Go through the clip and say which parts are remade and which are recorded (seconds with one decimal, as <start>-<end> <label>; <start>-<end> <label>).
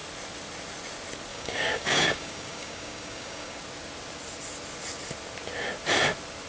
0.0-1.3 recorded; 1.3-3.6 remade; 3.6-6.5 recorded